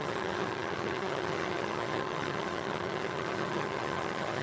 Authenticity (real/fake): fake